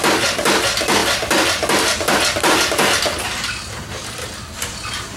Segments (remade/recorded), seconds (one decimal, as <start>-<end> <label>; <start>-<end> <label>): 0.0-5.2 recorded